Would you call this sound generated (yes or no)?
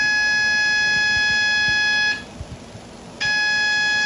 no